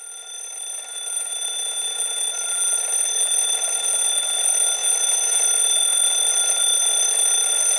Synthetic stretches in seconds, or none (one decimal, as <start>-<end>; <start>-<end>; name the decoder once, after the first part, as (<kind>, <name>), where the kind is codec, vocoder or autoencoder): 0.9-2.3 (vocoder, Vocos); 4.8-5.4